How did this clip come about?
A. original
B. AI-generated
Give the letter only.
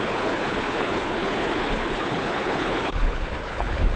B